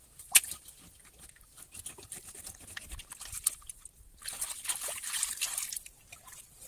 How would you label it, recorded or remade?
recorded